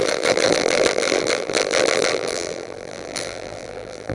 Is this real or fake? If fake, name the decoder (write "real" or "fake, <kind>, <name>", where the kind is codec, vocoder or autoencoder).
fake, vocoder, BigVGAN v2